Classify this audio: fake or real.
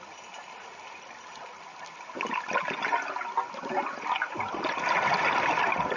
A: real